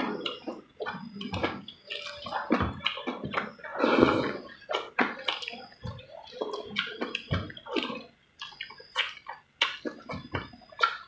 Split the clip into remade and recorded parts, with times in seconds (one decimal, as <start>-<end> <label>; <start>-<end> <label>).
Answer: 0.0-1.4 recorded; 1.4-1.9 remade; 1.9-11.1 recorded